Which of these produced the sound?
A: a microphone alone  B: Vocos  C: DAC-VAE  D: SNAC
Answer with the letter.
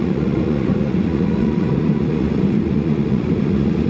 B